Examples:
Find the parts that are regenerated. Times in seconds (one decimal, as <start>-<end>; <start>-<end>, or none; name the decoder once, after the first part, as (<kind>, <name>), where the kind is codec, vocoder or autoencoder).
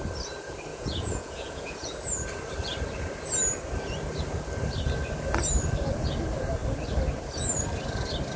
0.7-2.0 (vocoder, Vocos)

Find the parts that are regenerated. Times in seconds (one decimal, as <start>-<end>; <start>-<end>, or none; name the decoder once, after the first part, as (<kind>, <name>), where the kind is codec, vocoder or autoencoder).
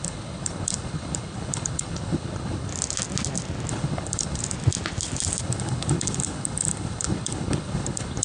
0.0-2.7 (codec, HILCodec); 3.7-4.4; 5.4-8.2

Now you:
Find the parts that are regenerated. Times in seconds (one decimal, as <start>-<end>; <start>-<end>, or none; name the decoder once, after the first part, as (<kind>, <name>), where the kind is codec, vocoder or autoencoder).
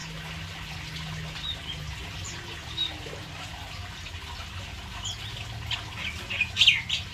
none